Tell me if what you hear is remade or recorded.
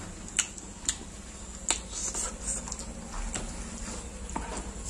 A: recorded